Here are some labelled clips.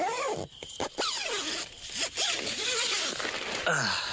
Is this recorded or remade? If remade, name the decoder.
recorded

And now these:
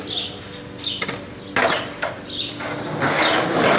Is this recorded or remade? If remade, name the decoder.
recorded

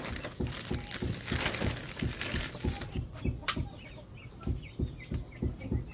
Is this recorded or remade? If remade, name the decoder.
recorded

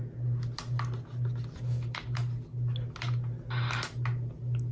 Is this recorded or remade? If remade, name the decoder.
recorded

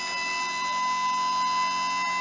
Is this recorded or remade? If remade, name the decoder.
recorded